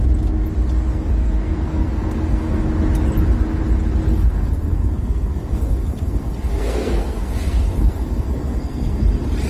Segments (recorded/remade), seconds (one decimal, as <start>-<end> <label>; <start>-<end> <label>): 0.0-0.9 recorded; 0.9-2.6 remade; 2.6-4.1 recorded; 4.1-9.0 remade; 9.0-9.5 recorded